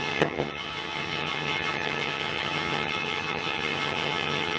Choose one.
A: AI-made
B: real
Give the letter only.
A